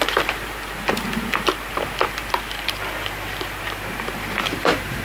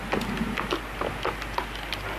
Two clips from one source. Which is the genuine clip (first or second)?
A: second